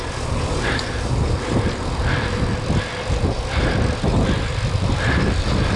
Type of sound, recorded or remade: remade